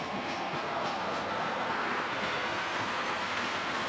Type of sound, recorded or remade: remade